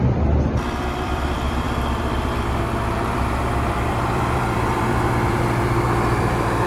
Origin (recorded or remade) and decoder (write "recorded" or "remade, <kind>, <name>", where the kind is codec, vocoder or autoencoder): remade, vocoder, BigVGAN v2